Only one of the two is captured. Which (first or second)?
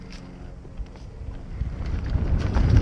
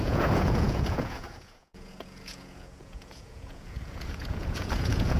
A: first